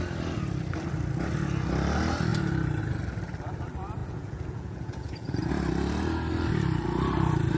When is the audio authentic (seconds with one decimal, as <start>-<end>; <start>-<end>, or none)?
0.0-4.0; 5.5-7.6